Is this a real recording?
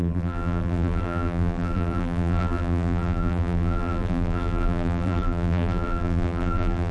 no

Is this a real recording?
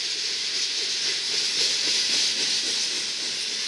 yes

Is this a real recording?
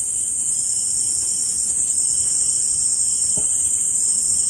yes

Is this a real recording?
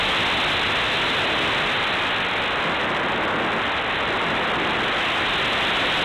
yes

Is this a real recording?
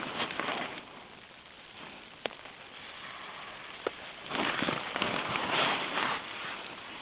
yes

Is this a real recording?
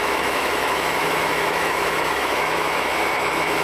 no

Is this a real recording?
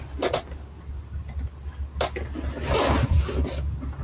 yes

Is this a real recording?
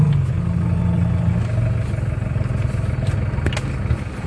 yes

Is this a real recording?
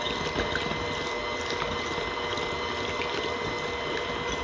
yes